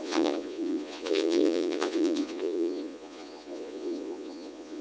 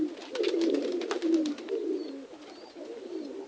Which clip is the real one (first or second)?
second